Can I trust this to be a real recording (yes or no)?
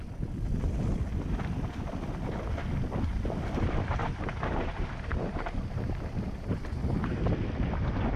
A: yes